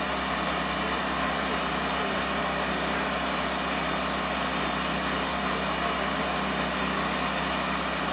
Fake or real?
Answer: real